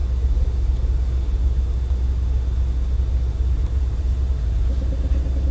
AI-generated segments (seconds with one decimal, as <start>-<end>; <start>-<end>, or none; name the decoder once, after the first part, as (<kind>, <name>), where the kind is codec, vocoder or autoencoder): 3.3-5.5 (vocoder, BigVGAN v2)